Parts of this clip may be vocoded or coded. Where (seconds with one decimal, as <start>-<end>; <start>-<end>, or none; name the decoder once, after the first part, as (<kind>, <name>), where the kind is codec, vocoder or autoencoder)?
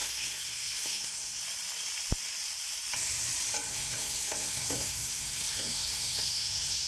0.0-1.4 (codec, SNAC); 3.7-6.9